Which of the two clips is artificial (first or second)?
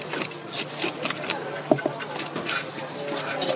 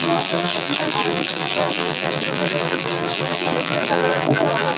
second